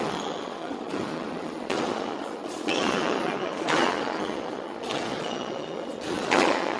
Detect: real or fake fake